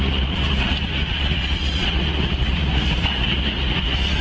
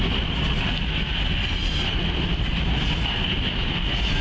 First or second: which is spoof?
first